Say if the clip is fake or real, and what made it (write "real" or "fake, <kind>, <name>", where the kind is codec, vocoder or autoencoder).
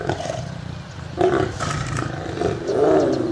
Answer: real